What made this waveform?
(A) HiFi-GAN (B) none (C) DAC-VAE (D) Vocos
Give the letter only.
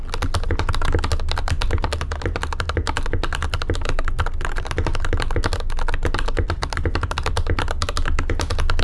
B